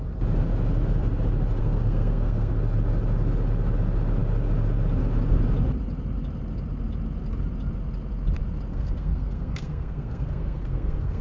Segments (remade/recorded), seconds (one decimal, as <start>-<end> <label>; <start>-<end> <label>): 0.0-1.6 recorded; 1.6-2.5 remade; 2.5-8.7 recorded; 8.7-11.2 remade